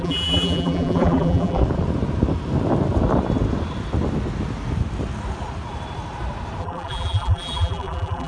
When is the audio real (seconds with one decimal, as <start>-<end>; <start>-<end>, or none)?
1.6-6.6